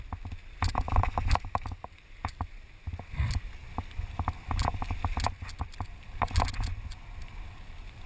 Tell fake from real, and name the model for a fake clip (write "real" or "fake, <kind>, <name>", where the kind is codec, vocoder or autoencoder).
real